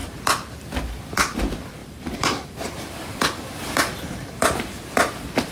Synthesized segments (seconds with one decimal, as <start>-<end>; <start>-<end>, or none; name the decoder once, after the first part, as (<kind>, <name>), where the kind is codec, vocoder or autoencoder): 1.8-5.1 (vocoder, BigVGAN v2)